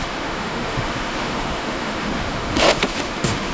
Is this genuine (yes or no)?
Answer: no